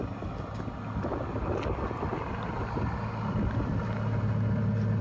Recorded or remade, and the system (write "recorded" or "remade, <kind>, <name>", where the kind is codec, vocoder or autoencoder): recorded